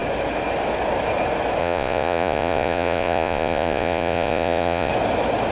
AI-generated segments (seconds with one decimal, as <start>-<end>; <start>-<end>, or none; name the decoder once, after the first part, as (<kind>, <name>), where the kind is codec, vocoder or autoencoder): 1.6-4.9 (vocoder, Vocos)